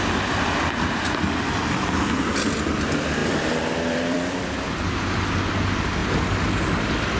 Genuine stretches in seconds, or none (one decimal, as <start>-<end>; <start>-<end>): 0.0-3.2; 5.5-7.2